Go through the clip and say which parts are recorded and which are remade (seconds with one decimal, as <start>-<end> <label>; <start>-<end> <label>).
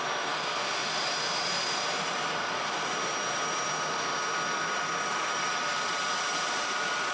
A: 0.0-0.8 recorded; 0.8-2.5 remade; 2.5-5.1 recorded; 5.1-7.1 remade